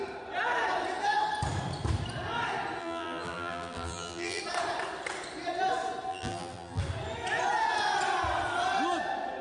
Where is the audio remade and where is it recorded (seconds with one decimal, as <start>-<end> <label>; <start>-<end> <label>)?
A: 0.0-2.8 recorded; 2.8-4.4 remade; 4.4-6.1 recorded; 6.1-6.8 remade; 6.8-9.4 recorded